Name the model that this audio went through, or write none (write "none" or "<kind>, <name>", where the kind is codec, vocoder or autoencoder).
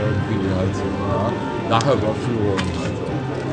none